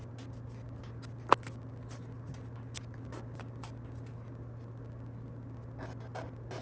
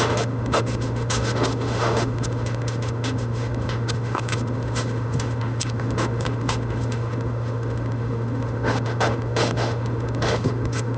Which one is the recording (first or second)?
first